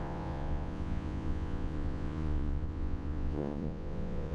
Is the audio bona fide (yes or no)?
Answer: no